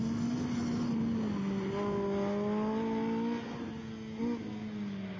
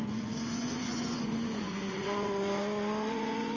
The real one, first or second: first